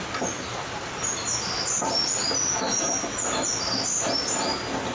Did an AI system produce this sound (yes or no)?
no